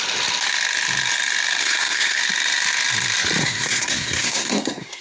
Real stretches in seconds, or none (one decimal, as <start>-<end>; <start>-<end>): 0.0-1.6; 2.2-3.4